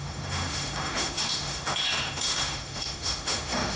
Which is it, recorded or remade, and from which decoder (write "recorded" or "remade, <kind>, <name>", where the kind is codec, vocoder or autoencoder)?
remade, autoencoder, DAC-VAE